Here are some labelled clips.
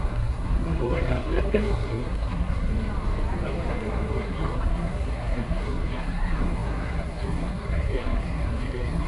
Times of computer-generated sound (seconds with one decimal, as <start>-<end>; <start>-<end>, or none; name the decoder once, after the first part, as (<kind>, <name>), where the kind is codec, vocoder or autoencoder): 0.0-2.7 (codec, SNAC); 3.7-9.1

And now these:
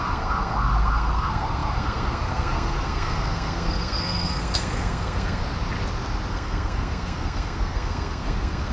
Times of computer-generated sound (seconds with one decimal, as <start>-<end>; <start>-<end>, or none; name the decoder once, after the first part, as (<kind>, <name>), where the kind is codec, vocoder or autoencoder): 0.0-5.4 (codec, SNAC); 6.3-8.7

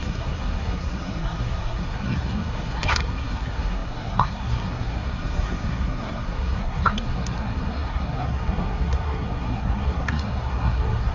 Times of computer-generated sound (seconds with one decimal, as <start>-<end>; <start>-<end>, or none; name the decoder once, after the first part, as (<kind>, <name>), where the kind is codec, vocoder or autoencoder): 0.0-11.1 (codec, SNAC)